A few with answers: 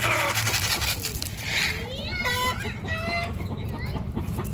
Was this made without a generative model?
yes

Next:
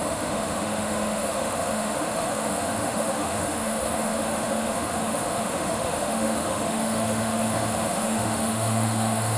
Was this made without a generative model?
no